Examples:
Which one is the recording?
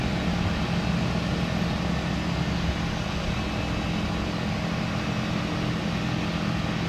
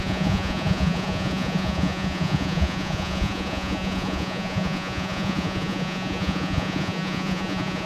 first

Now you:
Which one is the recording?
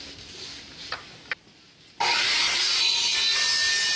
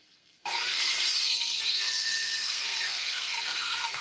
first